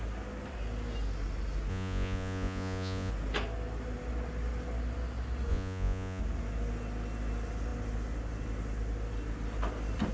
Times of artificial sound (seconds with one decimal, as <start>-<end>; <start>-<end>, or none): 1.7-3.1; 5.5-6.2

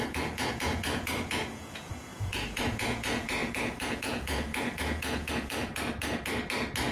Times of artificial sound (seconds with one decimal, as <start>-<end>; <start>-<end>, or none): 0.0-5.7

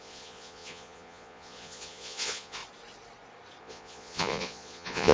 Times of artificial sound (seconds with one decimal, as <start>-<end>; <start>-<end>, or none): 0.0-2.6; 3.6-5.1

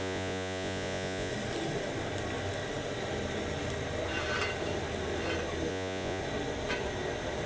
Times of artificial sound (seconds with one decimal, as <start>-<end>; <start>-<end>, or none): 0.0-1.3; 5.7-6.2

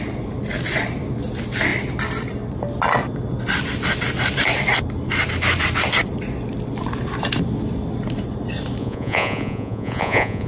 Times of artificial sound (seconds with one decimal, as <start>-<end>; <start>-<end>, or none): 8.8-10.5

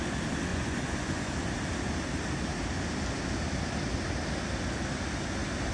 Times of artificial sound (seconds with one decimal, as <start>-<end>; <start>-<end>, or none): 0.5-1.3

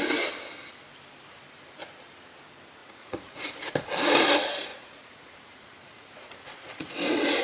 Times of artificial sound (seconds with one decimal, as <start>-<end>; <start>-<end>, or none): 2.8-3.7; 4.7-7.4